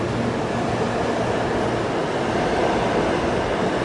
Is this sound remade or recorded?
recorded